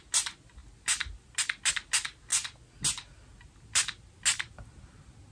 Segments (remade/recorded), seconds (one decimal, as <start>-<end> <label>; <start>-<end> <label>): 0.0-5.3 recorded